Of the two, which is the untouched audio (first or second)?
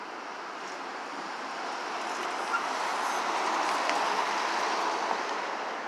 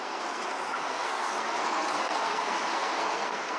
first